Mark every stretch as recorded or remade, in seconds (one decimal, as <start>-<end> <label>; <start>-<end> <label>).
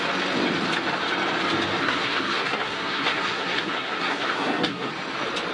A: 0.0-1.8 recorded; 1.8-4.9 remade; 4.9-5.5 recorded